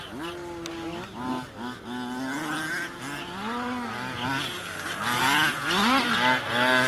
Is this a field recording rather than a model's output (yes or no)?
yes